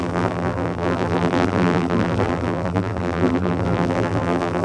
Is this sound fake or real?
fake